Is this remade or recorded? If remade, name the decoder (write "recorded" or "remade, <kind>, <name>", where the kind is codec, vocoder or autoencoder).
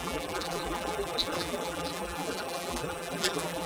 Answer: remade, vocoder, BigVGAN v2